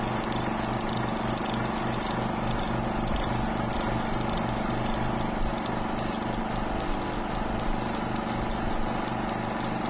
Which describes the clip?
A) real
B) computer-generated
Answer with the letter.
A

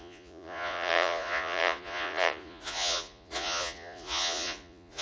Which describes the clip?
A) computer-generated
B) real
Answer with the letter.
A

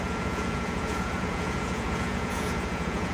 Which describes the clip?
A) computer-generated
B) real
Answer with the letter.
A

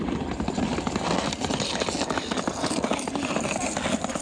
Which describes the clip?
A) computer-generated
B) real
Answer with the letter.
B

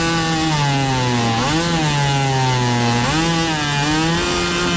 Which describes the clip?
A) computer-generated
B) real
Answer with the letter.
B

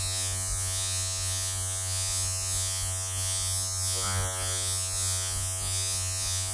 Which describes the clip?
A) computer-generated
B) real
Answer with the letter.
A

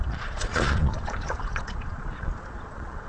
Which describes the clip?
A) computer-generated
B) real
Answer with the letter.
A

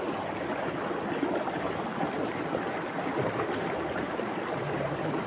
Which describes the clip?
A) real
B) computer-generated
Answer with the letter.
A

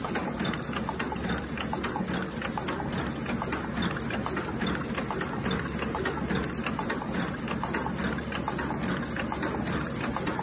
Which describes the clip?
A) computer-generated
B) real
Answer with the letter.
B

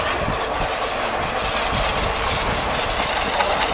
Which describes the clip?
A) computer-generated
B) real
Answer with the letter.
B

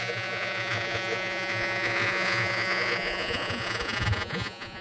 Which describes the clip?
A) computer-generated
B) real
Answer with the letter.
A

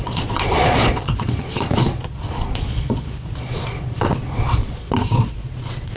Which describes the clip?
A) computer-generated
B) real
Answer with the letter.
A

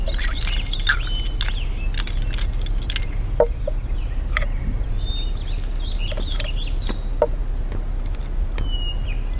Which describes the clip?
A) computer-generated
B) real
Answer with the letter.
B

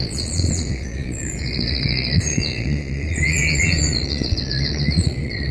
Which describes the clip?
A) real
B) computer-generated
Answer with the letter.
B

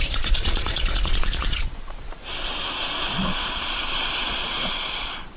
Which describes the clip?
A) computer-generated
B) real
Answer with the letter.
A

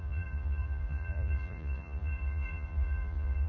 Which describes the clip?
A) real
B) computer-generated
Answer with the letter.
B